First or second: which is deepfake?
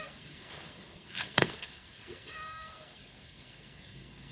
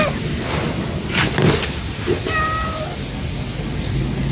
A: first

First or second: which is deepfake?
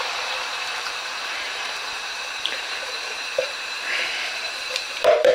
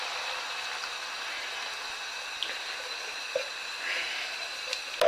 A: first